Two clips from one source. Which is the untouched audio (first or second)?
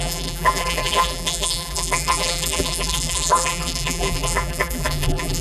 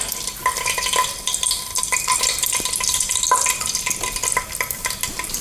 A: second